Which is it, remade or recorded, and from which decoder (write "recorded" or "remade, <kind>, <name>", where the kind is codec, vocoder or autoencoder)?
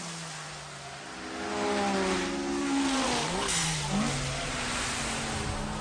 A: recorded